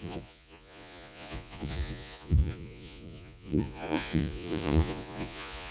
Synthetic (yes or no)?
yes